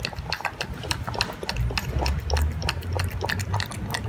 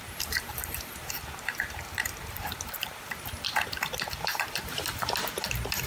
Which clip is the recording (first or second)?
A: first